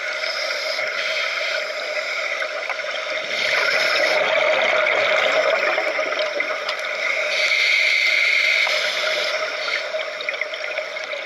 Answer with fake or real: real